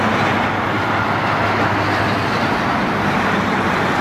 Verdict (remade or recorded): recorded